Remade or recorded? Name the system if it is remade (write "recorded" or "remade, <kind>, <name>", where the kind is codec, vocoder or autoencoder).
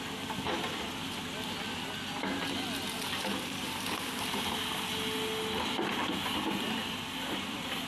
recorded